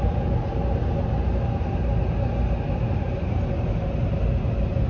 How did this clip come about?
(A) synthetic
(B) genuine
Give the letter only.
B